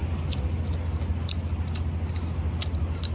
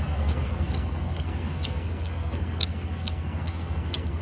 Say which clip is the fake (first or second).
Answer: second